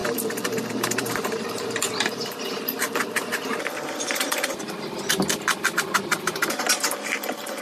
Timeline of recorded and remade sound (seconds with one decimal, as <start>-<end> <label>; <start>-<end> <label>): 0.0-4.6 remade; 4.6-6.1 recorded; 6.1-7.6 remade